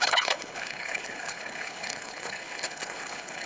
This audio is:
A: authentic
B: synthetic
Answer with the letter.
B